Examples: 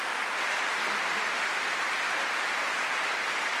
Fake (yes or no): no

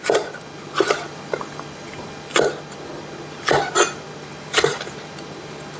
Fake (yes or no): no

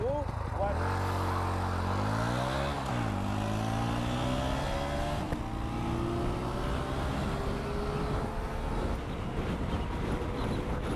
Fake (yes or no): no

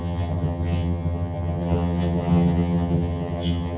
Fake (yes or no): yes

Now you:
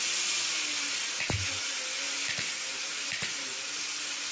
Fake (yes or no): no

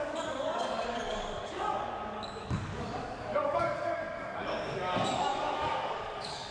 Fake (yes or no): yes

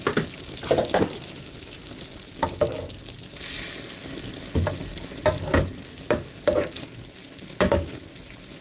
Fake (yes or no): no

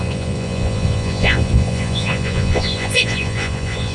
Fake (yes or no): yes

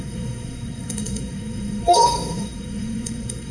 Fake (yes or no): yes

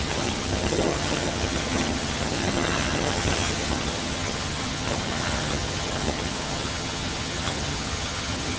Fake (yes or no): yes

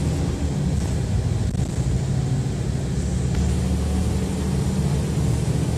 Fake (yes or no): no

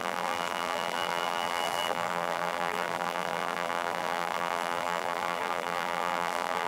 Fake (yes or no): yes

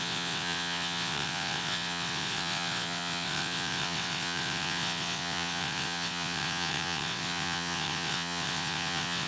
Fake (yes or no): yes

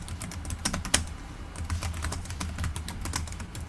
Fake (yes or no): no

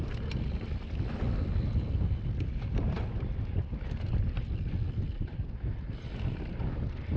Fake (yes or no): no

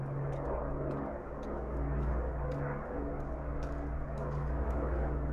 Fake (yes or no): yes